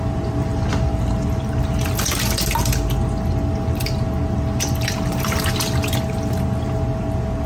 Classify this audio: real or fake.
real